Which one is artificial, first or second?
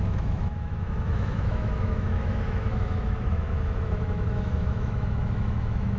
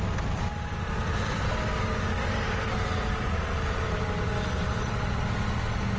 first